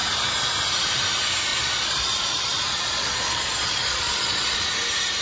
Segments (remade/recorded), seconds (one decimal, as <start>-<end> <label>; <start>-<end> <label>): 0.0-1.5 recorded; 1.5-4.6 remade; 4.6-5.2 recorded